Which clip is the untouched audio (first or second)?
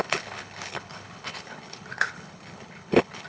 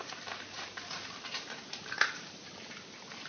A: second